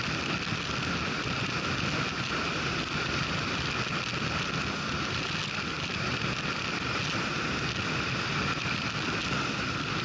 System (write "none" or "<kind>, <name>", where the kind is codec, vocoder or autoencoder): none